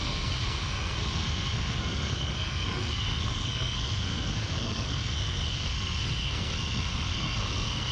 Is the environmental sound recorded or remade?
remade